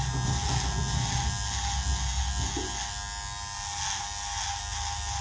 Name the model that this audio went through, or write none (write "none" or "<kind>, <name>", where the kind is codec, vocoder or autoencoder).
none